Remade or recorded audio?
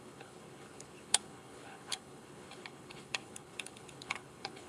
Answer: remade